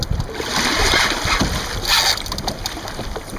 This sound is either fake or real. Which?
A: real